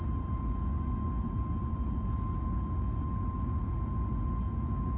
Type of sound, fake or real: real